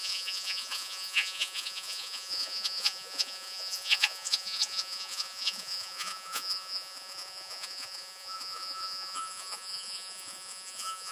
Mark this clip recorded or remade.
remade